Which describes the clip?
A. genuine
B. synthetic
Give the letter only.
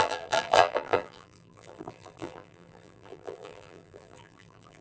B